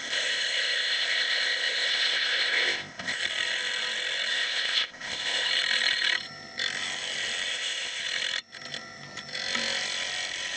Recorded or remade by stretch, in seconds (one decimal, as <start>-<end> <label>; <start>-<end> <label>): 0.0-3.2 remade; 3.2-4.3 recorded; 4.3-5.5 remade; 5.5-7.5 recorded; 7.5-8.0 remade; 8.0-10.6 recorded